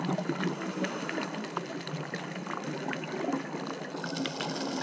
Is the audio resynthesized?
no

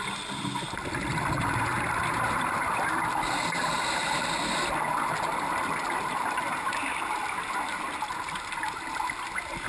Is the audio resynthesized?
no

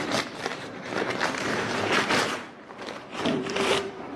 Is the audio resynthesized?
yes